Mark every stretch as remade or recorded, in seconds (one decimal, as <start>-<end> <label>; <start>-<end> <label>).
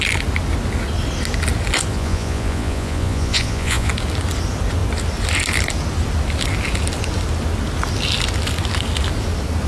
0.0-1.9 recorded; 1.9-3.9 remade; 3.9-9.7 recorded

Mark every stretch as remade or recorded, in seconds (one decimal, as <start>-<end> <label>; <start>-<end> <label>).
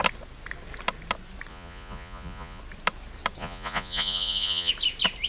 0.0-1.5 recorded; 1.5-2.6 remade; 2.6-3.4 recorded; 3.4-4.7 remade; 4.7-5.3 recorded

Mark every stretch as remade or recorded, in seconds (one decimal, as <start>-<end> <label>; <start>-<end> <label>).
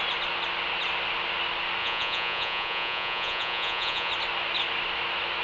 0.0-1.8 recorded; 1.8-4.1 remade; 4.1-5.4 recorded